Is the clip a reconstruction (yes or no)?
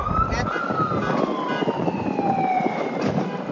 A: no